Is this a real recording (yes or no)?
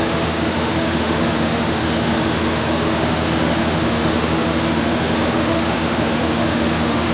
no